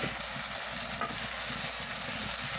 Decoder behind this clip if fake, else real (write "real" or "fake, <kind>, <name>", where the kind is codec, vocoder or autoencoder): fake, vocoder, BigVGAN v2